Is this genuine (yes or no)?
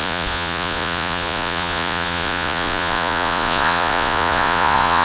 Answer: no